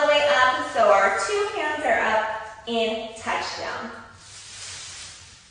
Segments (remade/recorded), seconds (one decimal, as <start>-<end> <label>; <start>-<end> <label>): 0.0-5.5 recorded